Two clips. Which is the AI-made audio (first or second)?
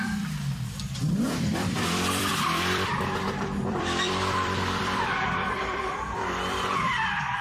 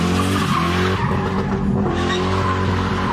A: first